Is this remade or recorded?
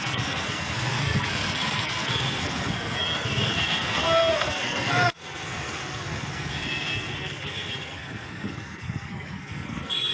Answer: remade